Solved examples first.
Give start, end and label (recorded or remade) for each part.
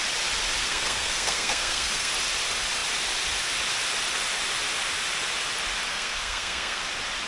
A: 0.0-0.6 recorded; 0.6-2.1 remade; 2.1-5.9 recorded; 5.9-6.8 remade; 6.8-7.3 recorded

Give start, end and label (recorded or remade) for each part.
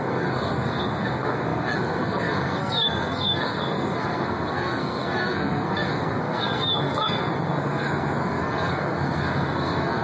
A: 0.0-10.0 remade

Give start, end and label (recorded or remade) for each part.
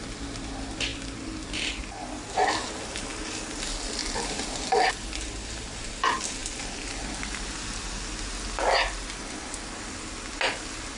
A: 0.0-11.0 recorded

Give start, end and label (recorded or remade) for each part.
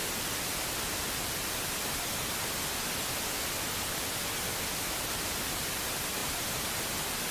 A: 0.0-7.3 recorded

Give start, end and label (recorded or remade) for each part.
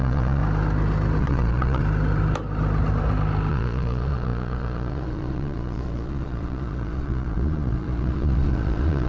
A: 0.0-0.4 remade; 0.4-1.2 recorded; 1.2-1.8 remade; 1.8-3.5 recorded; 3.5-9.1 remade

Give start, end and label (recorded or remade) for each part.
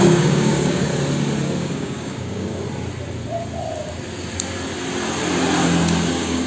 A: 0.0-0.9 remade; 0.9-1.6 recorded; 1.6-2.5 remade; 2.5-6.1 recorded; 6.1-6.5 remade